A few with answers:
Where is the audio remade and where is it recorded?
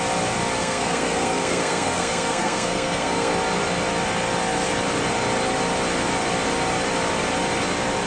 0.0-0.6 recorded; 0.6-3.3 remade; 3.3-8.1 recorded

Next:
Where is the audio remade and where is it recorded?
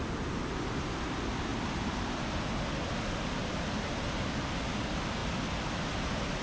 0.0-1.5 recorded; 1.5-2.3 remade; 2.3-3.4 recorded; 3.4-4.6 remade; 4.6-6.4 recorded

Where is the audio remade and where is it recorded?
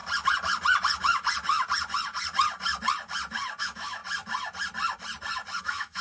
0.0-3.6 recorded; 3.6-4.0 remade; 4.0-5.6 recorded; 5.6-6.0 remade